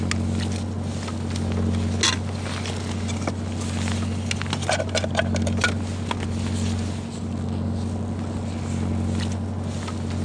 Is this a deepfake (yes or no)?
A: no